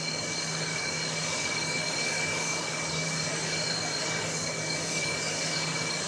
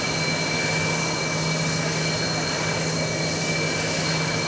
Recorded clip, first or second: second